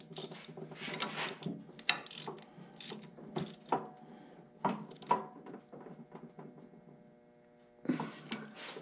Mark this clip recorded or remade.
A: recorded